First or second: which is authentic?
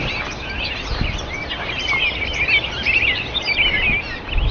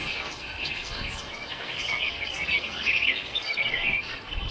first